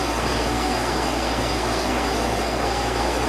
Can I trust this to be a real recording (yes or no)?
no